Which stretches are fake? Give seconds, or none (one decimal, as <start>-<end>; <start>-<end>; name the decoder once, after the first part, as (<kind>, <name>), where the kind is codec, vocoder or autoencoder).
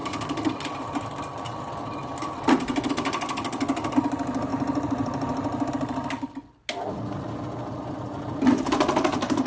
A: none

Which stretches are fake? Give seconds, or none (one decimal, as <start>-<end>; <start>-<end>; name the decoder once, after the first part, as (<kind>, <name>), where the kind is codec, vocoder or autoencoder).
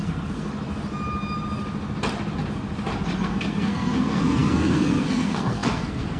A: 0.0-0.5 (codec, SNAC); 3.2-6.2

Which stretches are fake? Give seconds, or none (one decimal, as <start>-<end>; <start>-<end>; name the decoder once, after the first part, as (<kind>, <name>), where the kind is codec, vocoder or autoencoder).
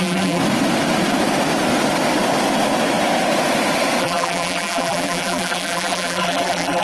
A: 0.0-0.4 (vocoder, BigVGAN v2); 4.0-6.8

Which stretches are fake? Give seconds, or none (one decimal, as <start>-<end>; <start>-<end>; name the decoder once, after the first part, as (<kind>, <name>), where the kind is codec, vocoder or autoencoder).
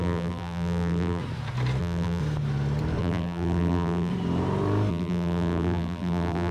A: 0.0-1.2 (vocoder, BigVGAN v2); 1.8-2.2; 3.0-4.1; 4.9-6.5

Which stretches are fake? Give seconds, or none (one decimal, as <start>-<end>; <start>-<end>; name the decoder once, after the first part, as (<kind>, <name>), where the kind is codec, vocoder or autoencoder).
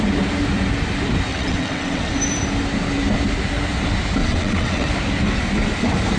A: 1.3-2.1 (vocoder, WaveNeXt); 4.2-4.9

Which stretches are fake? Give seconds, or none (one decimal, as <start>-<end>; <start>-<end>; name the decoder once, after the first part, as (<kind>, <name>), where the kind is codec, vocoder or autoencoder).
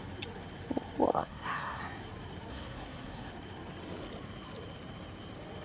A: 1.1-1.8 (codec, SNAC); 2.5-3.3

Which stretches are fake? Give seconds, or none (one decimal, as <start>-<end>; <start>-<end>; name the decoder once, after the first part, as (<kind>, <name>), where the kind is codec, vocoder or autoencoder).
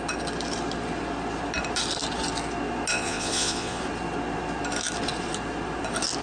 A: 2.9-3.8 (vocoder, Vocos)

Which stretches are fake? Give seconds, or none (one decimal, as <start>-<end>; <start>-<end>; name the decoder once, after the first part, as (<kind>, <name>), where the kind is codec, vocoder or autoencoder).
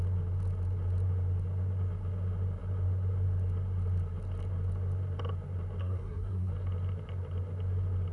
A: 5.8-6.5 (codec, SNAC)